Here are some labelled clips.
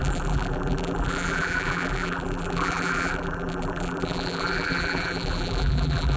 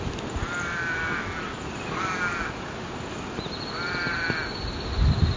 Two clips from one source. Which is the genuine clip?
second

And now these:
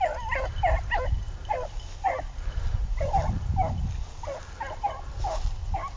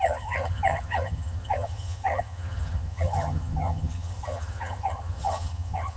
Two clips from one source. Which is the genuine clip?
first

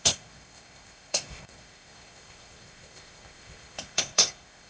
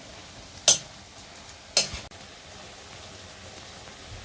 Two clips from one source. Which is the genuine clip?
second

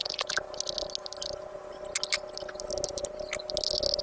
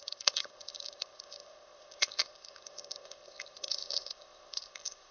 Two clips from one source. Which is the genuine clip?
first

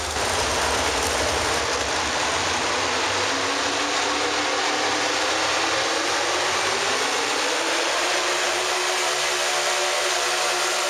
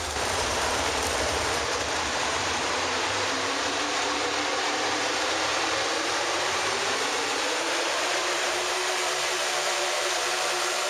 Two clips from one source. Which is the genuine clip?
first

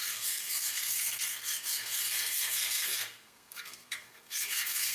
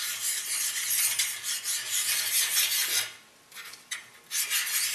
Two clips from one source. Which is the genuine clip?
second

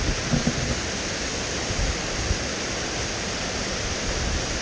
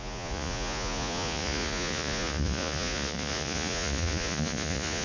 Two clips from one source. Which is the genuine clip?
first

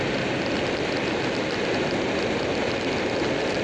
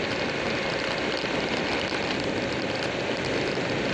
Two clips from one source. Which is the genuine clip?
first